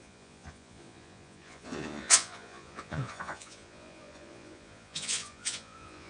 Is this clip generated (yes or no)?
yes